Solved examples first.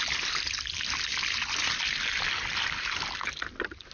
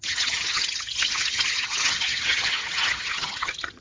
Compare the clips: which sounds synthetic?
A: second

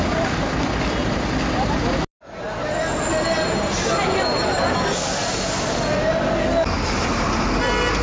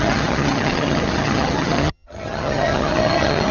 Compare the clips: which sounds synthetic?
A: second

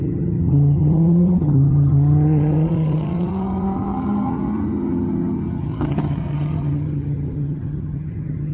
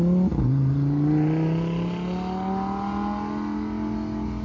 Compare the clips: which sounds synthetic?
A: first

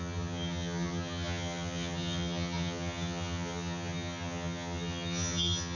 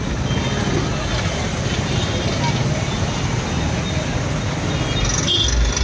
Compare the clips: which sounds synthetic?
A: first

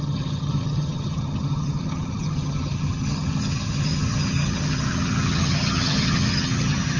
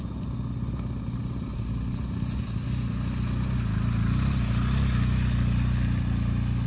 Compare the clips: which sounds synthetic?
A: first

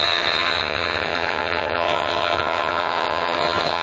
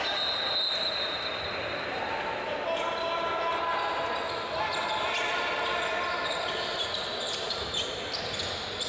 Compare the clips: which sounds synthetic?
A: first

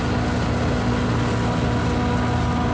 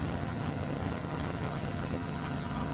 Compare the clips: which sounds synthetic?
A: second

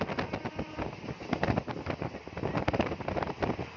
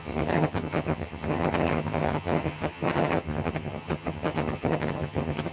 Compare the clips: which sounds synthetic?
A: second